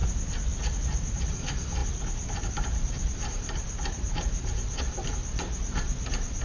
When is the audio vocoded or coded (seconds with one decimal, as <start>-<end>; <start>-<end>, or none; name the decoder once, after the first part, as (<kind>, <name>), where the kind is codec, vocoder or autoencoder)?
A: 1.3-6.4 (vocoder, BigVGAN v2)